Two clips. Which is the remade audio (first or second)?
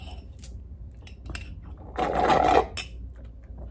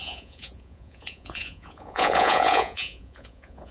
second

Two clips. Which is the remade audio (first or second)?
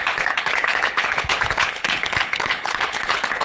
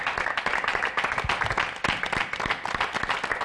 first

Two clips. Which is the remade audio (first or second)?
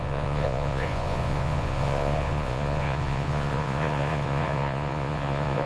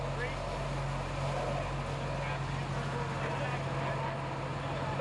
first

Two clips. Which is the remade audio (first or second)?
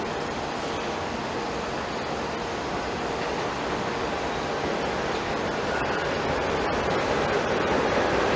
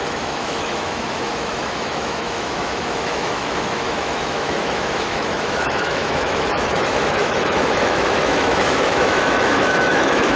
second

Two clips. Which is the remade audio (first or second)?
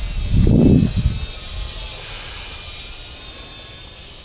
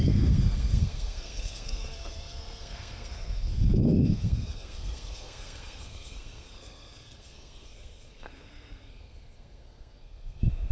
second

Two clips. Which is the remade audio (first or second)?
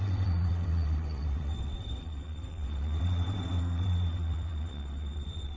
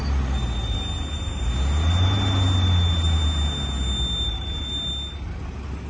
first